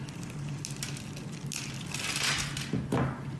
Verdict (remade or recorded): recorded